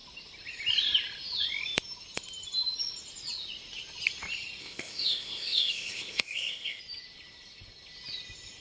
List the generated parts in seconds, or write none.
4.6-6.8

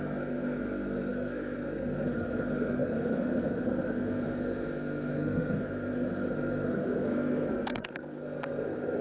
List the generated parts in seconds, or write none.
0.0-9.0

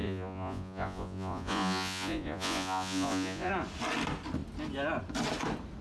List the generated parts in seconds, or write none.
0.0-3.5

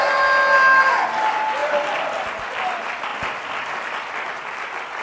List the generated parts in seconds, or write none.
none

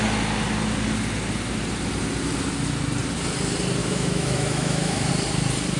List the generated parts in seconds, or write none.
3.8-5.1

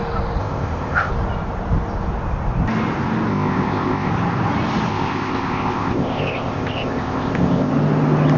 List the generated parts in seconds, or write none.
0.4-1.1; 3.3-4.1; 4.9-7.7